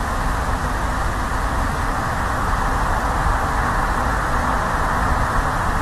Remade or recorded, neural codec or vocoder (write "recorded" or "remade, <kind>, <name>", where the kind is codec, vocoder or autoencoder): recorded